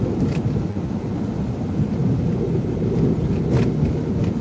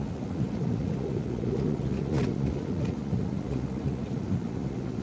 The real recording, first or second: first